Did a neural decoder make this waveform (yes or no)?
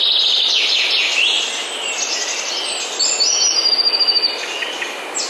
no